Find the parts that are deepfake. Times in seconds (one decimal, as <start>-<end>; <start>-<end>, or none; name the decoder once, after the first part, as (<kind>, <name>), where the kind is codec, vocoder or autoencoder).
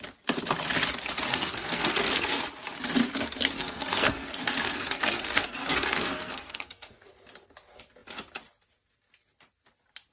1.3-2.4 (codec, SNAC); 3.0-7.1